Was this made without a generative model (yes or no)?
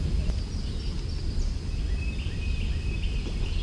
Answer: yes